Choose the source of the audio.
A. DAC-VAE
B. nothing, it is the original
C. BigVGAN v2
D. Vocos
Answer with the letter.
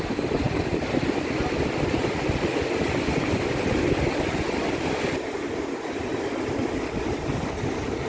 B